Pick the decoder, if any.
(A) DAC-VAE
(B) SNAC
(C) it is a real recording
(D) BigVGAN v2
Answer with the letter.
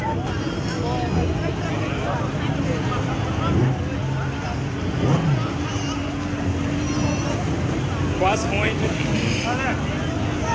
C